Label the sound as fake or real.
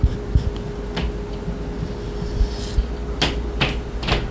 real